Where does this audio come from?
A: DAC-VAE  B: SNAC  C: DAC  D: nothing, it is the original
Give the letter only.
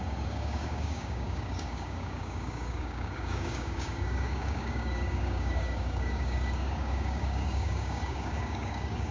C